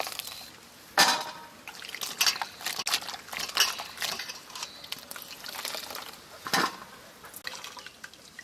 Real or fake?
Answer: real